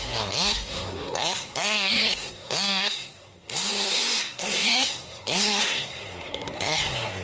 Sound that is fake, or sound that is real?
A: fake